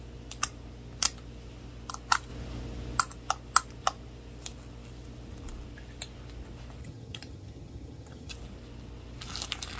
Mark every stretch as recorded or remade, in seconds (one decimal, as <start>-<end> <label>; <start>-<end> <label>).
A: 0.0-6.8 recorded; 6.8-8.3 remade; 8.3-9.8 recorded